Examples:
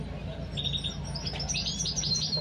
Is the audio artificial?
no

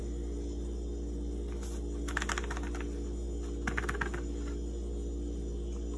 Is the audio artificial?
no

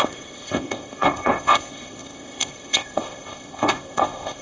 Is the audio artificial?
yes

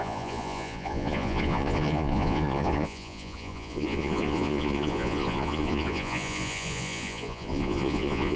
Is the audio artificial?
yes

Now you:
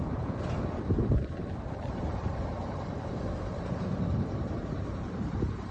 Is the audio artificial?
yes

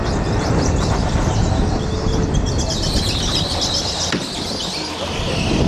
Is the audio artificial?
no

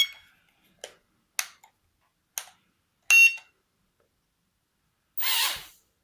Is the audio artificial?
no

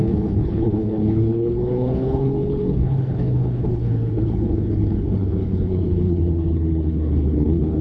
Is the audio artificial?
yes